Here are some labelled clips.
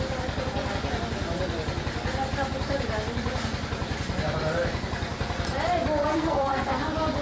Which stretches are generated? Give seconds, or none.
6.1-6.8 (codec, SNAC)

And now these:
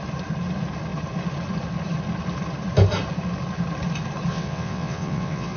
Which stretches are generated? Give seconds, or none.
4.3-5.6 (vocoder, WaveNeXt)

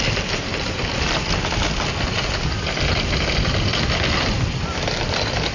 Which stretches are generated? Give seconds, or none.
none

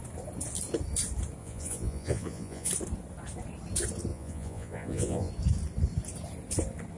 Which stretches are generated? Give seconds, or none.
1.4-2.7 (vocoder, Vocos); 4.1-5.3

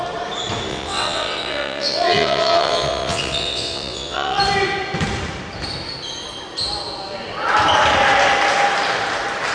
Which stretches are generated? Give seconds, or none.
0.7-4.4 (vocoder, WaveNeXt)

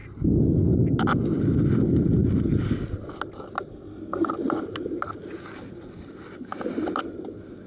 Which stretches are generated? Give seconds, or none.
3.7-4.3 (codec, SNAC)